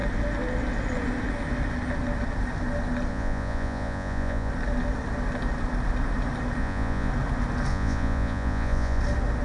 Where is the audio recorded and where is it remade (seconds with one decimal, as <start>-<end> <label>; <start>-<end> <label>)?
0.0-3.1 recorded; 3.1-4.5 remade; 4.5-6.6 recorded; 6.6-7.1 remade; 7.1-7.7 recorded; 7.7-9.0 remade; 9.0-9.4 recorded